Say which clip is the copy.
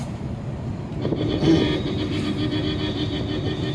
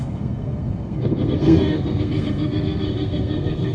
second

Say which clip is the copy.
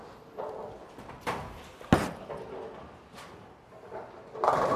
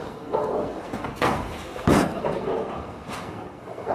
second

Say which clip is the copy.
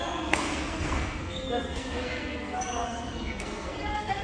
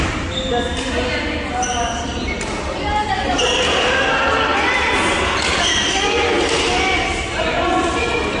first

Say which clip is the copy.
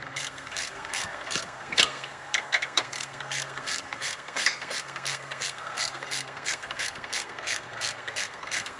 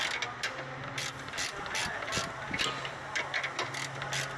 first